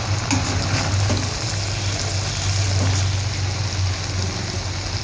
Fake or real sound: real